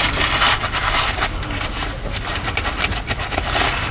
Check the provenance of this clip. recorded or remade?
recorded